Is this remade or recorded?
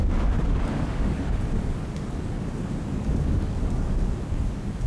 remade